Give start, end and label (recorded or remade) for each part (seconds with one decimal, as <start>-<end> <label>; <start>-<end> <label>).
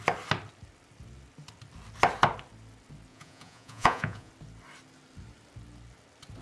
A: 0.0-3.1 recorded; 3.1-4.3 remade; 4.3-6.4 recorded